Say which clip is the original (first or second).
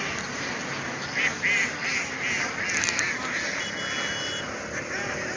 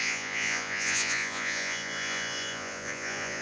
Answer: first